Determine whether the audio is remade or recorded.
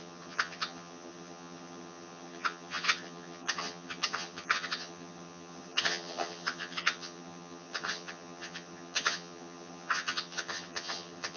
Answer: remade